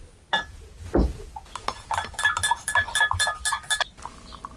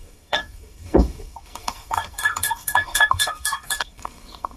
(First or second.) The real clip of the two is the first